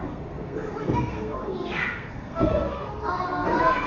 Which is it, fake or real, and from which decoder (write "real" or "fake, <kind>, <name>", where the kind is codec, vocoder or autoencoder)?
fake, codec, SNAC